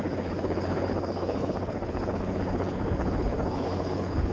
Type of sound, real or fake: fake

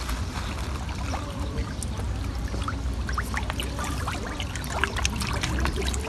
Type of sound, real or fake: real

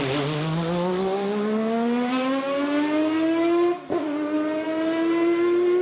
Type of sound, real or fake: real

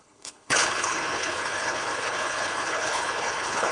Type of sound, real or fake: fake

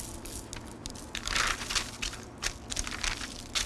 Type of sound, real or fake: real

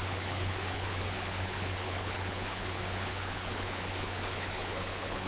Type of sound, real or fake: fake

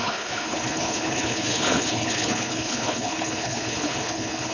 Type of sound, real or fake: fake